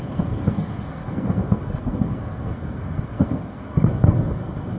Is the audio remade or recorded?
remade